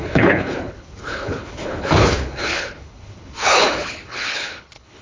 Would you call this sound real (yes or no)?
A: no